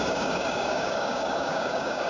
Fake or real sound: fake